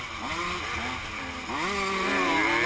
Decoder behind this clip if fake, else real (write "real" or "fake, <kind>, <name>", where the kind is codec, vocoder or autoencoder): real